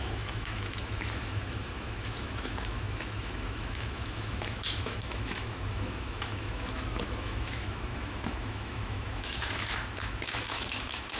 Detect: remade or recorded remade